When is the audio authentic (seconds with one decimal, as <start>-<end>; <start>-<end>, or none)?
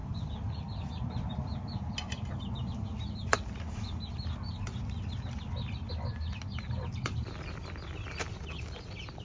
1.5-6.6; 7.2-8.4